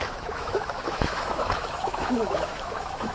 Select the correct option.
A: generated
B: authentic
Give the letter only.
A